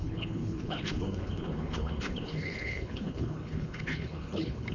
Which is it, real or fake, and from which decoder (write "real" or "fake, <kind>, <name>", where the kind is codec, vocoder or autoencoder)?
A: fake, codec, HILCodec